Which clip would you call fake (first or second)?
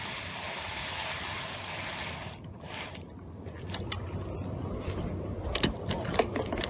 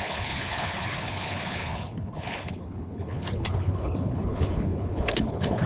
second